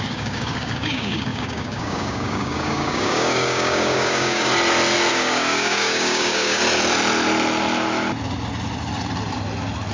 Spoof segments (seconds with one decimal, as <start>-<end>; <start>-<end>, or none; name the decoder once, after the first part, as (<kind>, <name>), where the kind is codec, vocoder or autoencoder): 0.0-4.5 (codec, DAC); 5.1-6.6